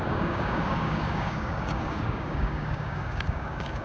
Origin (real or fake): fake